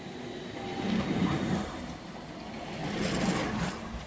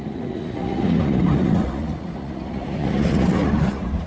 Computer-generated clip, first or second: second